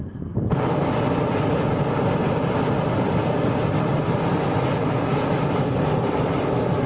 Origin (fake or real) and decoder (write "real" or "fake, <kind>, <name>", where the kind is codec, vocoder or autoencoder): real